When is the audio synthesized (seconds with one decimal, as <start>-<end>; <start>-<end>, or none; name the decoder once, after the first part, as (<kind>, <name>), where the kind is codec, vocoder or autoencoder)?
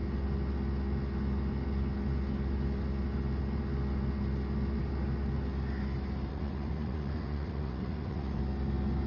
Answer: 6.3-8.4 (vocoder, Vocos)